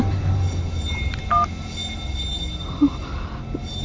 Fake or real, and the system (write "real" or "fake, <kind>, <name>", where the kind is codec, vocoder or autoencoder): real